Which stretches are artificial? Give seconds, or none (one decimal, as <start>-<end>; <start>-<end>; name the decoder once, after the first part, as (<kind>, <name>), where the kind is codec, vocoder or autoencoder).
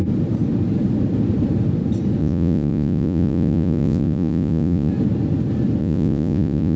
2.2-4.9 (vocoder, Vocos); 5.8-6.8